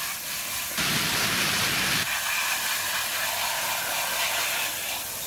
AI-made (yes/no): no